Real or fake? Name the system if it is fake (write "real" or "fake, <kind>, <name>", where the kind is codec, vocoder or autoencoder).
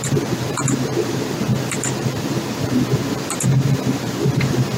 fake, vocoder, BigVGAN v2